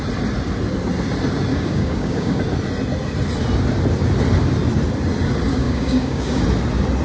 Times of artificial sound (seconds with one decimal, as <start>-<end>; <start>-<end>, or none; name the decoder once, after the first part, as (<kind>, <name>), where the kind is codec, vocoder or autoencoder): 1.5-2.4 (codec, DAC); 5.5-6.4